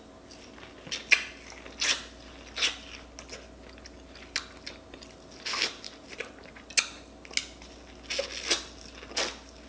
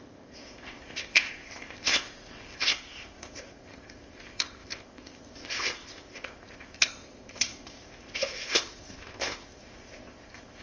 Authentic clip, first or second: first